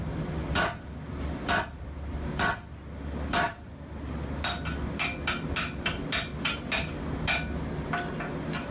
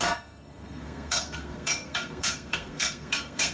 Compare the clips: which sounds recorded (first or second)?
first